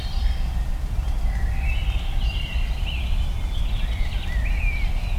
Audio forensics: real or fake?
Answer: real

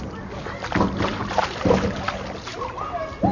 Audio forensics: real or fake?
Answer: real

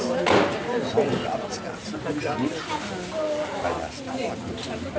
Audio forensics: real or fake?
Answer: real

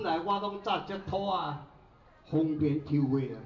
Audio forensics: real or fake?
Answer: real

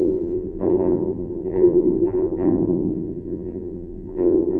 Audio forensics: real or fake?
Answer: fake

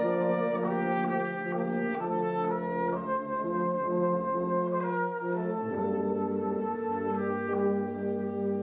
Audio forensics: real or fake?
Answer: real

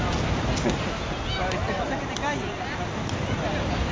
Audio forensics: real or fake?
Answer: real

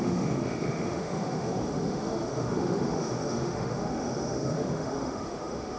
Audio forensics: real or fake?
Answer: fake